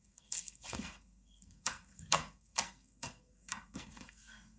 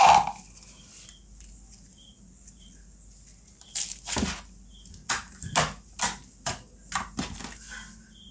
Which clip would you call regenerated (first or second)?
first